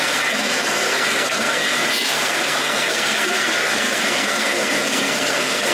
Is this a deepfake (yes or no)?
yes